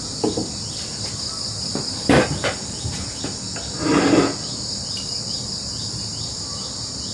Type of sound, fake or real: real